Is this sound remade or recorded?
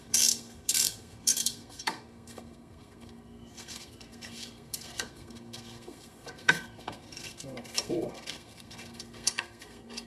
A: remade